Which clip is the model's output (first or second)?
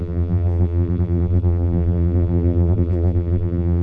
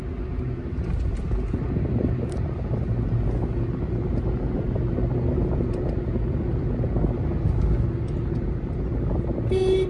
first